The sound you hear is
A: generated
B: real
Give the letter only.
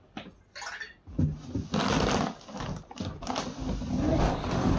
B